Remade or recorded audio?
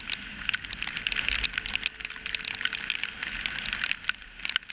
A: recorded